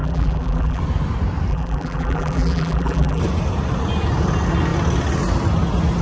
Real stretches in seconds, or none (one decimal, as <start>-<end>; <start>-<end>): 0.8-1.5; 3.2-6.0